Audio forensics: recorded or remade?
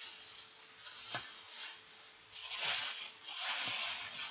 recorded